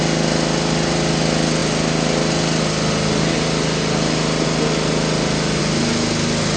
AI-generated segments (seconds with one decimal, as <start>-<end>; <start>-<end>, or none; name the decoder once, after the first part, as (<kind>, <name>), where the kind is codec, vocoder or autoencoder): none